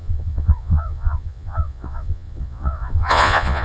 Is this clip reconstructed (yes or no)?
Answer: yes